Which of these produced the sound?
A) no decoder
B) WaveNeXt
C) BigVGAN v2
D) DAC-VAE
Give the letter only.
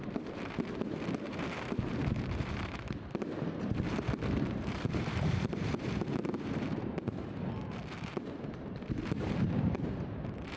C